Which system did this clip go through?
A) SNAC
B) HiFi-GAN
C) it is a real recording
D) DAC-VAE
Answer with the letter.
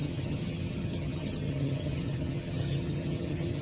B